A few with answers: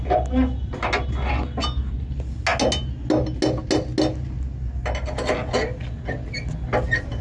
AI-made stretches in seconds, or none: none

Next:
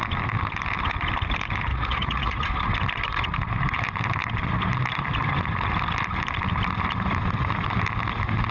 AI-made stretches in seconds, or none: 1.7-2.5 (vocoder, Vocos)

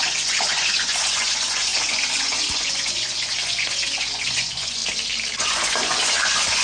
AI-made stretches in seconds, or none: 0.0-4.8 (vocoder, Vocos); 5.4-6.6

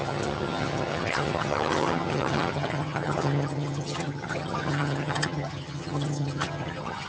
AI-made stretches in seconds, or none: 0.0-7.1 (vocoder, HiFi-GAN)

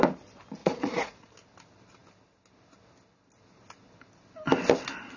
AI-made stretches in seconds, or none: 0.6-1.3 (vocoder, Vocos)

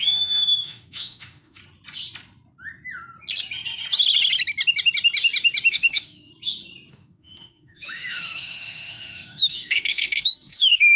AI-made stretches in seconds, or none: 0.0-1.6 (autoencoder, DAC-VAE); 5.7-6.3; 6.9-11.0